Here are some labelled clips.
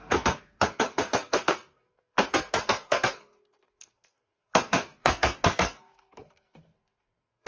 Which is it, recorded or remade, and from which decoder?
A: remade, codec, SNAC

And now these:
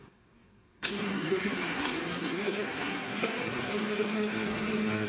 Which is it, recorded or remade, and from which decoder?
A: remade, codec, SNAC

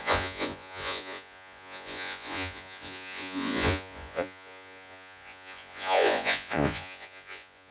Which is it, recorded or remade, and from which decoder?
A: remade, vocoder, Vocos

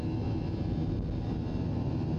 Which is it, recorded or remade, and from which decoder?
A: recorded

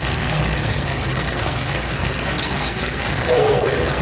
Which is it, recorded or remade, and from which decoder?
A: remade, codec, SNAC